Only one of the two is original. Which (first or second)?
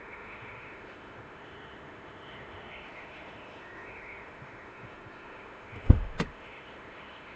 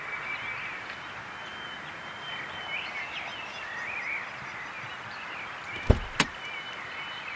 second